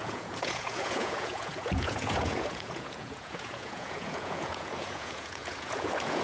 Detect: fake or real fake